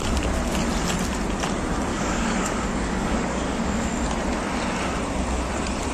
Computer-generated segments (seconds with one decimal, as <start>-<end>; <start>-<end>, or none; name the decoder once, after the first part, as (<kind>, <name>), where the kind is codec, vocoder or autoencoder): 1.9-3.9 (codec, DAC)